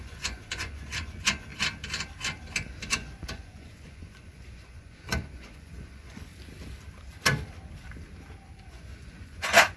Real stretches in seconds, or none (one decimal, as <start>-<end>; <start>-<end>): 1.5-2.9; 6.3-8.7